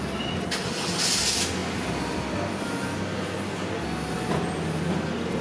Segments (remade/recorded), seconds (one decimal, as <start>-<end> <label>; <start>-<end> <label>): 0.0-5.4 recorded